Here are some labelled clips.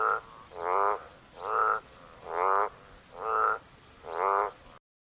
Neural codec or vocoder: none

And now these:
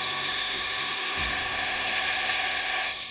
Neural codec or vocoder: codec, SNAC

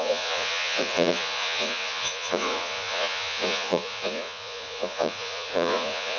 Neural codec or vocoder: vocoder, Vocos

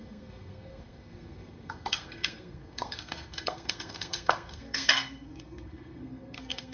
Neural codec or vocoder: codec, SNAC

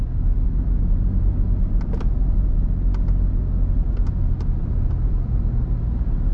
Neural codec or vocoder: none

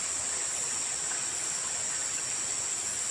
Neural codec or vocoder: none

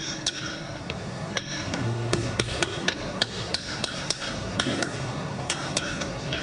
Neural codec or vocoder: codec, SNAC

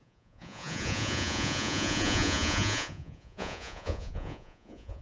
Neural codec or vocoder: vocoder, Vocos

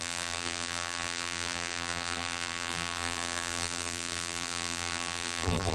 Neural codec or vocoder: vocoder, BigVGAN v2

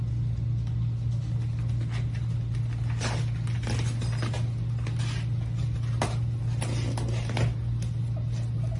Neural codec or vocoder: none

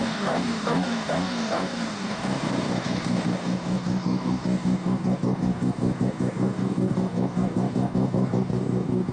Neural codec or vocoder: codec, DAC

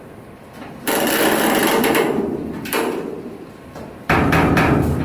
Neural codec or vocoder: vocoder, BigVGAN v2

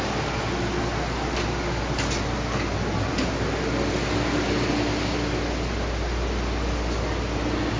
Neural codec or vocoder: none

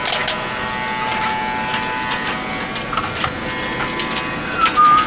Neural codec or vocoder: none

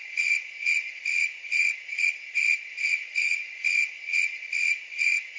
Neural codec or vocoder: vocoder, Vocos